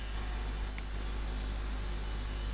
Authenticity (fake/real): real